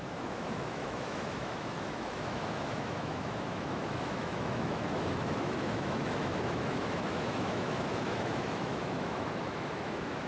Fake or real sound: fake